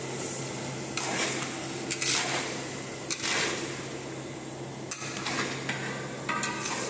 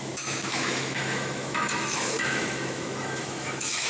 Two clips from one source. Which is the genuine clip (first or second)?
first